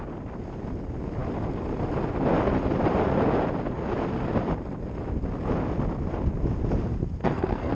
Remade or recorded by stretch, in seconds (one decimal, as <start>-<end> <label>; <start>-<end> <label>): 0.0-7.2 recorded; 7.2-7.7 remade